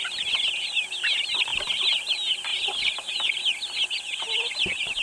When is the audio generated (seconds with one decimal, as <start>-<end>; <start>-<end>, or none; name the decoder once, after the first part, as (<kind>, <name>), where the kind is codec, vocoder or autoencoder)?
none